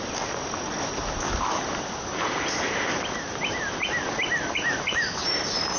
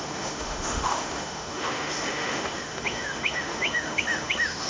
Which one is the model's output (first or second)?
second